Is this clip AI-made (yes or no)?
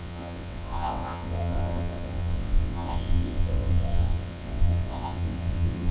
yes